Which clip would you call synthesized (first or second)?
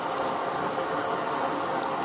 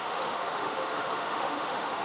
second